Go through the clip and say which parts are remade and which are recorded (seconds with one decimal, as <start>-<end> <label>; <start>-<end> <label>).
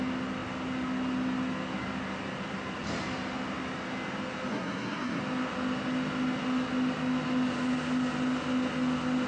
0.0-4.5 recorded; 4.5-5.2 remade; 5.2-9.3 recorded